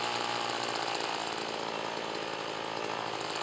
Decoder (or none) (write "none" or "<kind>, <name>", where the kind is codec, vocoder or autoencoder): none